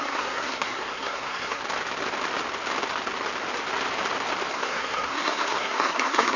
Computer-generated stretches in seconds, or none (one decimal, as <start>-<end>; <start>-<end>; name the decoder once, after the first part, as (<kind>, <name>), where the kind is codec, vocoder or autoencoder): 0.0-1.6 (codec, SNAC); 4.5-6.4